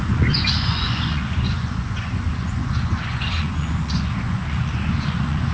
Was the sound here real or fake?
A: fake